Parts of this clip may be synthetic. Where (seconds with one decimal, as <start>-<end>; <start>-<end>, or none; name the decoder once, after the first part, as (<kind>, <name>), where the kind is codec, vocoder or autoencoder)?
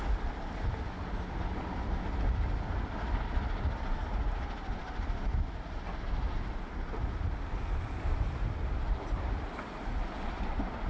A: none